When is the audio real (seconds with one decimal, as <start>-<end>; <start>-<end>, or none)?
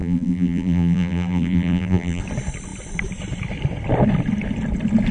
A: 2.2-5.1